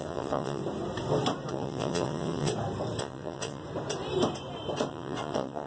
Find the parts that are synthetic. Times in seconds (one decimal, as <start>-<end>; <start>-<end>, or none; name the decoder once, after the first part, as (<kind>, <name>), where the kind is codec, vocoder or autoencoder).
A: 0.0-0.6 (vocoder, WaveNeXt); 1.5-2.5; 3.0-3.6; 4.9-5.7